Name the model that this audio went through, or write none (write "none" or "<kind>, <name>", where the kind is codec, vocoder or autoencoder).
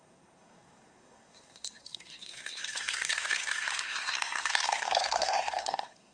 codec, SNAC